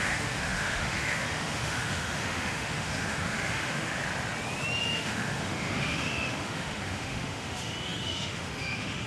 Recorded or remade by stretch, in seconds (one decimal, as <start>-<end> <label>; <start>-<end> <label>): 0.0-4.0 remade; 4.0-4.8 recorded; 4.8-9.1 remade